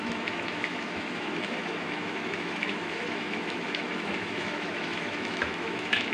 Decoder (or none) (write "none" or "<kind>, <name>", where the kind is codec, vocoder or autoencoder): autoencoder, DAC-VAE